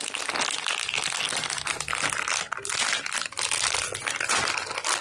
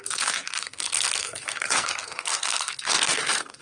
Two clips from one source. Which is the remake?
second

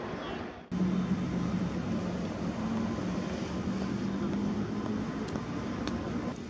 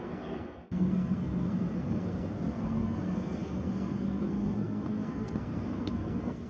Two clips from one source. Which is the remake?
second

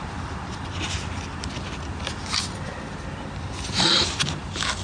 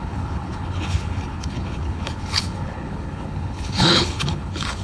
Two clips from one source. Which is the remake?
second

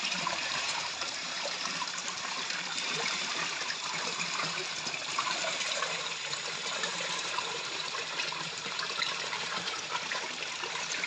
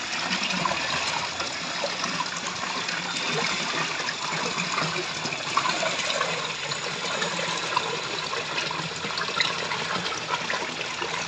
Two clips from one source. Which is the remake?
first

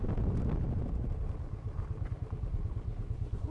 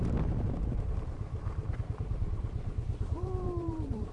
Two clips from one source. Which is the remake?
second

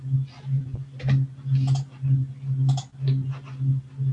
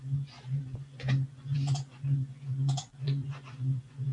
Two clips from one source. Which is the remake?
second